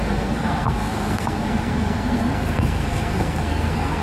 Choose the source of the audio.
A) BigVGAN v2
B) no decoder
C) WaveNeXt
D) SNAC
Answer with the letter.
D